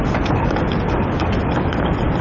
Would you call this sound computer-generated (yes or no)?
no